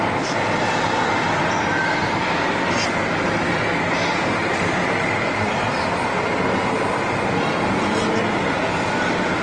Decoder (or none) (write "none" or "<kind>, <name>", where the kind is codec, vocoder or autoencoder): none